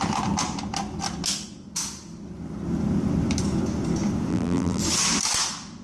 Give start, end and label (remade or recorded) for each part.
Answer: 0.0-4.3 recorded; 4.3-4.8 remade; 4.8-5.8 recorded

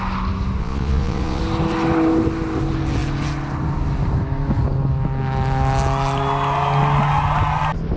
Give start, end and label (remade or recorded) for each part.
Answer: 0.0-0.6 recorded; 0.6-1.4 remade; 1.4-8.0 recorded

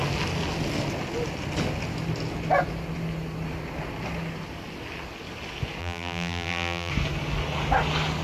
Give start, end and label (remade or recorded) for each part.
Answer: 0.0-5.8 recorded; 5.8-6.9 remade; 6.9-8.2 recorded

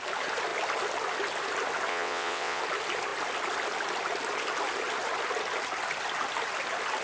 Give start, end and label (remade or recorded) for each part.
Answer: 0.0-1.9 recorded; 1.9-2.6 remade; 2.6-7.0 recorded

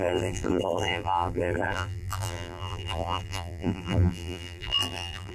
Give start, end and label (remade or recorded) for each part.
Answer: 0.0-5.3 remade

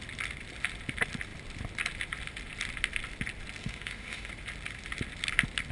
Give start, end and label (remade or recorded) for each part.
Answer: 0.0-3.6 recorded; 3.6-4.3 remade; 4.3-5.7 recorded

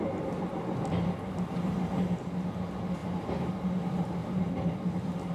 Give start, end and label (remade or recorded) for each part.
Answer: 0.0-3.0 recorded; 3.0-3.5 remade; 3.5-4.2 recorded; 4.2-4.7 remade; 4.7-5.3 recorded